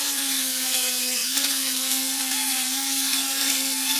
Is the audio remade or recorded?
remade